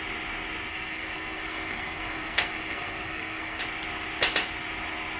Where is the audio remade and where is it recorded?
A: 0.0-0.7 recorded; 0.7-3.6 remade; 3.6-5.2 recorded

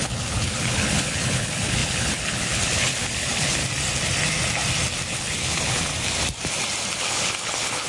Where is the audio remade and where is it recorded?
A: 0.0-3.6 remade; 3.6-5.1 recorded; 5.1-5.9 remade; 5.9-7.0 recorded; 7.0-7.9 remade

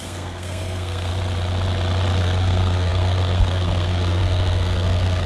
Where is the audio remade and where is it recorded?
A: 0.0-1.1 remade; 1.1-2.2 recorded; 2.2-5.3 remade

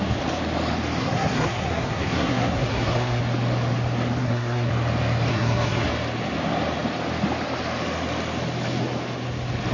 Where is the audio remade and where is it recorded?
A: 0.0-1.0 recorded; 1.0-3.2 remade; 3.2-4.2 recorded; 4.2-4.7 remade; 4.7-5.3 recorded; 5.3-5.9 remade; 5.9-9.7 recorded

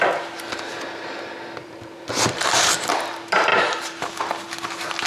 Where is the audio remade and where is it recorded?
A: 0.0-1.6 recorded; 1.6-2.9 remade; 2.9-3.5 recorded; 3.5-4.2 remade; 4.2-5.1 recorded

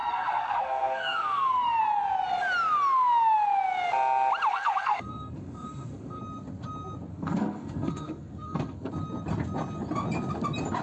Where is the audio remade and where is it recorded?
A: 0.0-1.8 remade; 1.8-4.5 recorded; 4.5-6.2 remade; 6.2-7.1 recorded; 7.1-8.9 remade; 8.9-10.8 recorded